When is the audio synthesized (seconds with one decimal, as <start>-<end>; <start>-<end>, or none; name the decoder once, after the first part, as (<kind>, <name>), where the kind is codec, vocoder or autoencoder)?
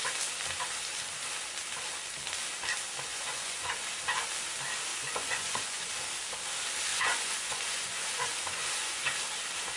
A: 3.1-3.7 (vocoder, Vocos); 4.9-5.9; 6.9-9.0